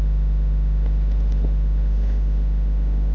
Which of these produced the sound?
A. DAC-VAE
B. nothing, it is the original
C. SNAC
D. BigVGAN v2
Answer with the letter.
A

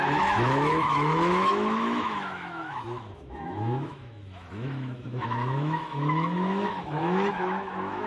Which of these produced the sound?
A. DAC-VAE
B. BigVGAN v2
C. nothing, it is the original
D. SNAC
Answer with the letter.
A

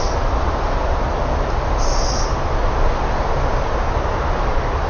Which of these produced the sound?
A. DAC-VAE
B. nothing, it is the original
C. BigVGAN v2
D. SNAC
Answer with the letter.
B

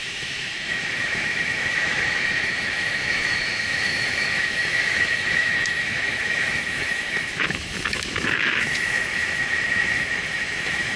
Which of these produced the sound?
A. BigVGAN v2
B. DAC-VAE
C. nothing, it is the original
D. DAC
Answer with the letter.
B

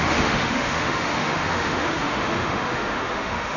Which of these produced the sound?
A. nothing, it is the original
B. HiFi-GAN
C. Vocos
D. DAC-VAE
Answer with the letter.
D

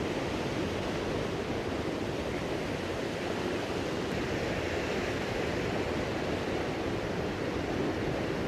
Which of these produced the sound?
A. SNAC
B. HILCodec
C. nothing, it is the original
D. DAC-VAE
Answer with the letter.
C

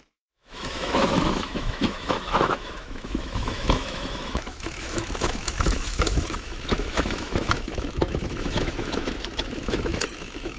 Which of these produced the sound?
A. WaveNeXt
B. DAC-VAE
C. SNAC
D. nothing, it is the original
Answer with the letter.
B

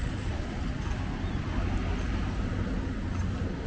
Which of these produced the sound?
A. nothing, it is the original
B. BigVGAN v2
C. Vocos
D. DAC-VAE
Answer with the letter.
A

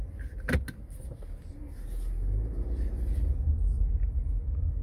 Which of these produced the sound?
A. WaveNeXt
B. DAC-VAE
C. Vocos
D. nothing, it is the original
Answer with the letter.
D